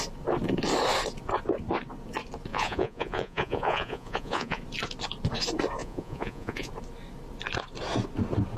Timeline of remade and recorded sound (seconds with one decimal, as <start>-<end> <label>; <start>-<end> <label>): 0.0-2.5 recorded; 2.5-4.6 remade; 4.6-5.8 recorded; 5.8-6.7 remade; 6.7-8.6 recorded